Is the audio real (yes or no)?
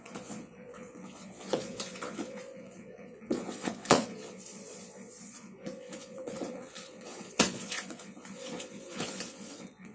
no